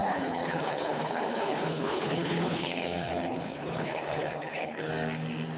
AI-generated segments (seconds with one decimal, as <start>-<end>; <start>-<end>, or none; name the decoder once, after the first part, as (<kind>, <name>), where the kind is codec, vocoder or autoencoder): 0.0-4.9 (codec, HILCodec)

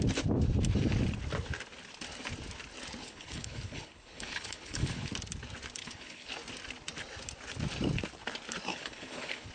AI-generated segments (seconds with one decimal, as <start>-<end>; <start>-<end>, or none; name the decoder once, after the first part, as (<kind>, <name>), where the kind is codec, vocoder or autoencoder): 3.0-5.1 (codec, HILCodec); 5.8-6.3; 8.7-9.5

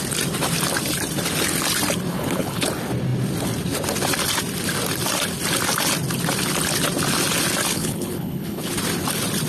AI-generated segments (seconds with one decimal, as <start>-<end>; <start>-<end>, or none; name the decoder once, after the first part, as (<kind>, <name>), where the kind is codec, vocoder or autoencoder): 2.1-2.7 (codec, HILCodec); 7.7-8.7

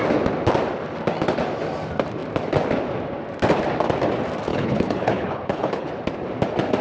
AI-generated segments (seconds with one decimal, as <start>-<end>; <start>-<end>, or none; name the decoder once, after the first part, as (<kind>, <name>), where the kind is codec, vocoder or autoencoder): 4.5-5.9 (codec, HILCodec)

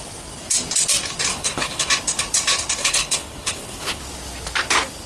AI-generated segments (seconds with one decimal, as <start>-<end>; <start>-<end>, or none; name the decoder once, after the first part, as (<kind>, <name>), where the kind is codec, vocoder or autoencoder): 1.3-1.9 (codec, HILCodec); 2.8-4.0